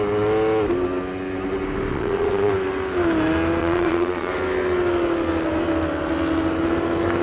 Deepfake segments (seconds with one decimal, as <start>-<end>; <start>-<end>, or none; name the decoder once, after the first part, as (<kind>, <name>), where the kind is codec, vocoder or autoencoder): 1.9-2.5 (vocoder, Vocos); 3.6-4.3